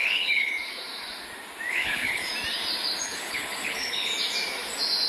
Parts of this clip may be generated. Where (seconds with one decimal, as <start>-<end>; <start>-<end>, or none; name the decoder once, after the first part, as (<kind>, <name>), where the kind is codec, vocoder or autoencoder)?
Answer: 0.0-0.5 (codec, HILCodec); 1.7-2.3; 3.0-4.1

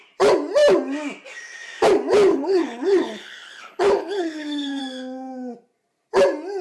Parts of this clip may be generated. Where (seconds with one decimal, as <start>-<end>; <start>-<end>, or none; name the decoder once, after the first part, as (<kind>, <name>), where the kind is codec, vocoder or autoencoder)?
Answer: 2.3-4.8 (codec, HILCodec)

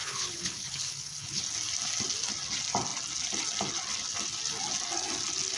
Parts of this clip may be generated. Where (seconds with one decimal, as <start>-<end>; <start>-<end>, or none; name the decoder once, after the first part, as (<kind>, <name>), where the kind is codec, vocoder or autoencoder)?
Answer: 0.0-1.4 (codec, HILCodec)

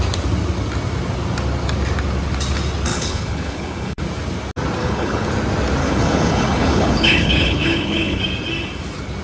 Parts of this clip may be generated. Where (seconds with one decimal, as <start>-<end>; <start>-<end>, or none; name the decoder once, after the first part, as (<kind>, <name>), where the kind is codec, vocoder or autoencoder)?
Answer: 2.9-4.0 (codec, HILCodec); 4.8-5.3; 5.8-8.2